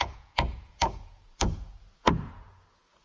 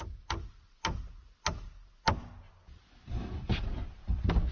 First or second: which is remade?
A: first